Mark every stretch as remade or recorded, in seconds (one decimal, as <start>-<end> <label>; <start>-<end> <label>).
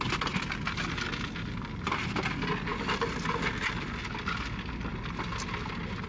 0.0-6.1 recorded